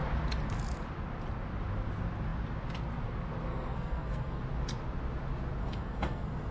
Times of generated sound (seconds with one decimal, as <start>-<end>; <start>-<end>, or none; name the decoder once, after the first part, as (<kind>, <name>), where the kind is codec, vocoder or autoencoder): 3.5-4.4 (codec, SNAC); 5.6-6.5